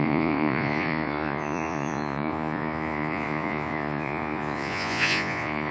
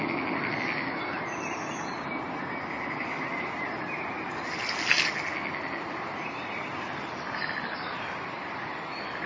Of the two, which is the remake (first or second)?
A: first